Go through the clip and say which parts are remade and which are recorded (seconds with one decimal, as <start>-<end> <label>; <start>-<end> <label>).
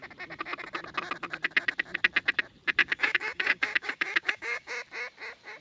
0.0-2.8 recorded; 2.8-4.7 remade; 4.7-5.6 recorded